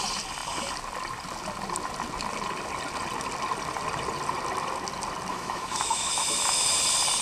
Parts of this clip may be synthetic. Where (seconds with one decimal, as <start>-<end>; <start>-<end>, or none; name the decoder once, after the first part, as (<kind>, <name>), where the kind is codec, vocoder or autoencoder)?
5.3-6.8 (autoencoder, DAC-VAE)